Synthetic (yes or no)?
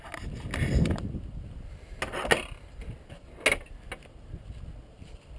no